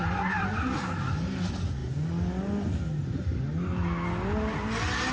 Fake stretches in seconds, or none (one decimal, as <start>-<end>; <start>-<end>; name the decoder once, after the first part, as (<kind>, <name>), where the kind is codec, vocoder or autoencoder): none